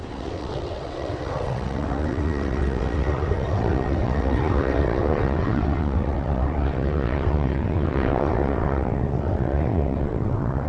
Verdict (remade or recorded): remade